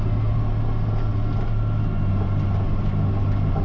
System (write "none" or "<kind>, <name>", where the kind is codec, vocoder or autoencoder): none